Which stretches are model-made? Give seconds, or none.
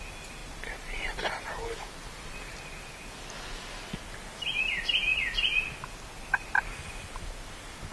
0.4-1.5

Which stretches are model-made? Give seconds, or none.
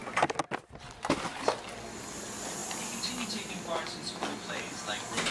none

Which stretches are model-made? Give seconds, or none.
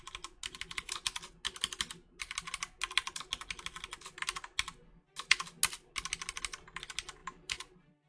7.2-8.1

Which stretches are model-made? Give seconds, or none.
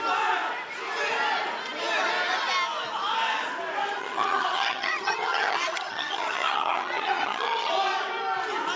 4.0-7.7